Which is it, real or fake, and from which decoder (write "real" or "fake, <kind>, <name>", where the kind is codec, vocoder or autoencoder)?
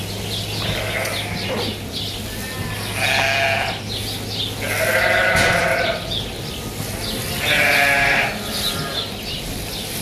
real